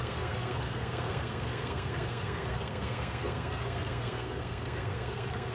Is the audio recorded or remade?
remade